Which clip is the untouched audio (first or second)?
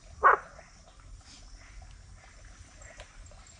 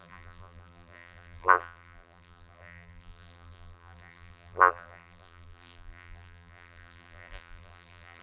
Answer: first